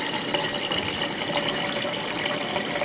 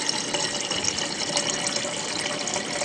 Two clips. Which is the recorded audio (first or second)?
second